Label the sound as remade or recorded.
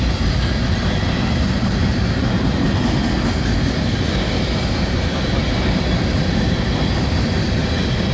recorded